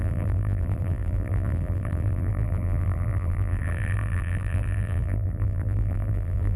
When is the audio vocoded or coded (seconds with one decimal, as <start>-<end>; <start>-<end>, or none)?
0.0-6.6